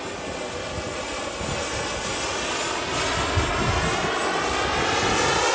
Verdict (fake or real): real